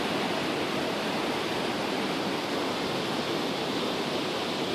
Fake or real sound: real